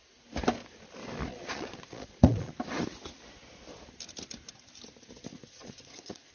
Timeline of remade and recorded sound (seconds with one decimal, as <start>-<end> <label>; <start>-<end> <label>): 0.0-1.3 recorded; 1.3-2.5 remade; 2.5-5.3 recorded; 5.3-6.3 remade